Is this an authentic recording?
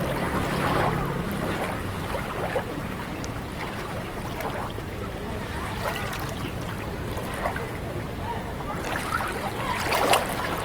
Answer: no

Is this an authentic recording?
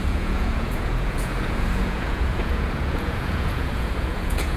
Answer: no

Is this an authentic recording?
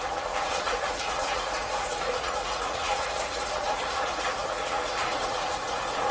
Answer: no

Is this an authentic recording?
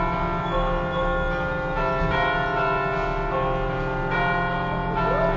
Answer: yes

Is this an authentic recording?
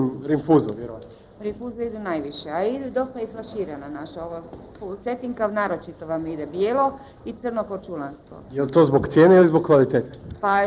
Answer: yes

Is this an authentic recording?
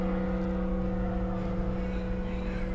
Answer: yes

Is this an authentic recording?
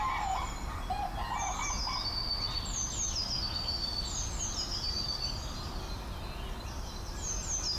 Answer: yes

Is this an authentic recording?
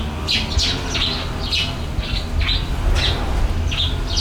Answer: yes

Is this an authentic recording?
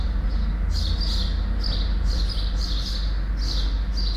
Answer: yes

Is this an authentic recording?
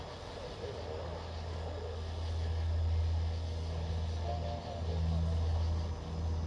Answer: yes